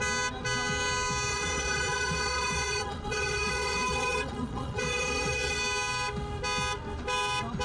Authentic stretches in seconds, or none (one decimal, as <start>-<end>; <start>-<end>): 0.0-1.3; 5.6-7.6